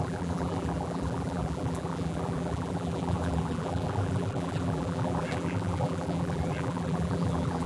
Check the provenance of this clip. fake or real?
fake